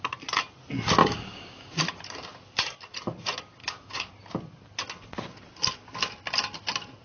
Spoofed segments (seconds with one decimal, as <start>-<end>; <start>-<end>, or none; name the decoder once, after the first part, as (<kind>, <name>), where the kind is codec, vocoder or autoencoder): 1.0-1.8 (codec, DAC); 3.6-4.1